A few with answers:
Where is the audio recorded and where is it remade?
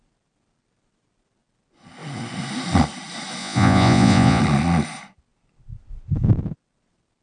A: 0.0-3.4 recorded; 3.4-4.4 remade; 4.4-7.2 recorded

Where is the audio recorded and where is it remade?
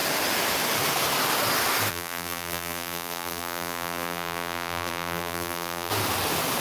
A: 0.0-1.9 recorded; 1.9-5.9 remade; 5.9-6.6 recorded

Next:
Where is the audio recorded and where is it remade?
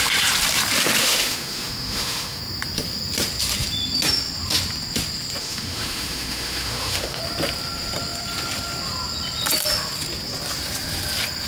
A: 0.0-1.0 recorded; 1.0-2.4 remade; 2.4-5.4 recorded; 5.4-7.2 remade; 7.2-11.5 recorded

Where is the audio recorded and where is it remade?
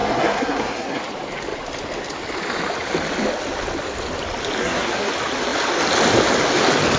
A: 0.0-1.0 remade; 1.0-4.6 recorded; 4.6-5.1 remade; 5.1-7.0 recorded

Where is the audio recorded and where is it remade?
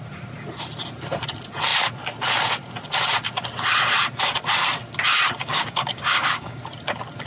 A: 0.0-5.4 recorded; 5.4-6.6 remade; 6.6-7.3 recorded